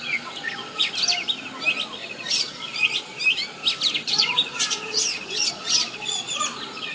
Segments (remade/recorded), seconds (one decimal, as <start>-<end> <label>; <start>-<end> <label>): 0.0-0.9 remade; 0.9-1.9 recorded; 1.9-3.1 remade; 3.1-3.9 recorded; 3.9-6.9 remade